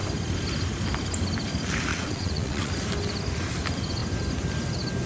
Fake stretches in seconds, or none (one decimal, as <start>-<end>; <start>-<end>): 1.9-2.7